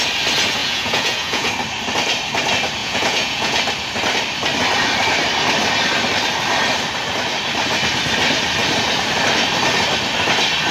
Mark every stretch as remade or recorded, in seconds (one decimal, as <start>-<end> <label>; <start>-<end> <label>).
0.0-0.6 recorded; 0.6-1.5 remade; 1.5-2.8 recorded; 2.8-3.6 remade; 3.6-10.7 recorded